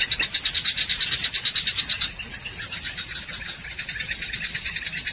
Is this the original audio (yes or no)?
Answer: yes